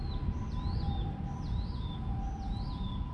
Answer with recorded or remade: recorded